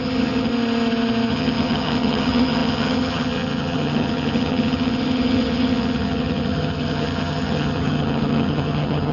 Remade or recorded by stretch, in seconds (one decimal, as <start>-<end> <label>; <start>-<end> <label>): 0.0-0.5 remade; 0.5-1.3 recorded; 1.3-9.1 remade